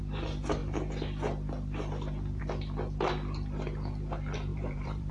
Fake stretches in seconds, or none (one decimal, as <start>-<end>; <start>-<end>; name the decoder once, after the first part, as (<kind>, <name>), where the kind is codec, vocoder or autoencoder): 4.5-5.1 (vocoder, BigVGAN v2)

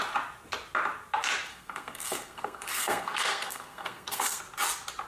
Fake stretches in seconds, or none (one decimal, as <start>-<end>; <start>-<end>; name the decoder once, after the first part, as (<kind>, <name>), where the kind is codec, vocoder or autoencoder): 1.5-4.4 (codec, SNAC)

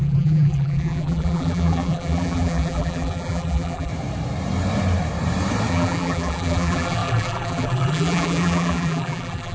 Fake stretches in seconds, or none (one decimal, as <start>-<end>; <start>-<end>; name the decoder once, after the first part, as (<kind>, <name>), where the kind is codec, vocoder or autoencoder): 0.0-3.9 (vocoder, BigVGAN v2); 5.7-9.5

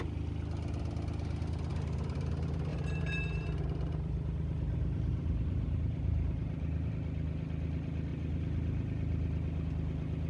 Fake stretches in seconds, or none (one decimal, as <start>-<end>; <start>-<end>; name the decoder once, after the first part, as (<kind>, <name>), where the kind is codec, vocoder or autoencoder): 1.7-2.3 (vocoder, BigVGAN v2); 2.7-6.9; 8.1-9.7

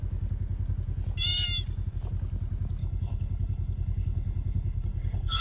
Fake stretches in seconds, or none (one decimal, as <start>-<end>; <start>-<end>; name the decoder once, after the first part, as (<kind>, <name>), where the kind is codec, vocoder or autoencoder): 2.8-5.4 (codec, HILCodec)

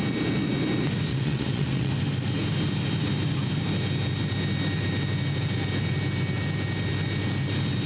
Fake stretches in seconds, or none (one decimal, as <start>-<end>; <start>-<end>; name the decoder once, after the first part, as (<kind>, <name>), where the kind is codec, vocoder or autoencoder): 1.1-1.9 (vocoder, WaveNeXt)

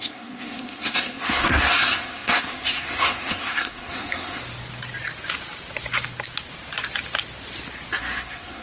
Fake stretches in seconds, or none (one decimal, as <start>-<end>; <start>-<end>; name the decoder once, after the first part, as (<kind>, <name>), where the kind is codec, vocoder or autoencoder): 0.0-4.4 (codec, SNAC); 8.0-8.6

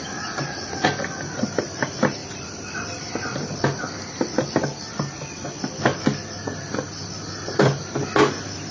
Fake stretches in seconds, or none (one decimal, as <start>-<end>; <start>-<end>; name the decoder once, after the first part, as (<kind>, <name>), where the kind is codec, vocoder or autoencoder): 2.2-3.0 (vocoder, BigVGAN v2); 5.9-6.5